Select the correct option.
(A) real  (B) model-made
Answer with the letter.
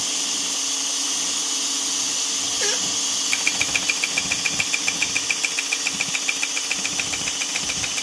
A